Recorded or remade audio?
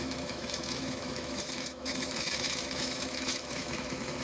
remade